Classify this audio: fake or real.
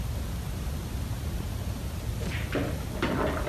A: real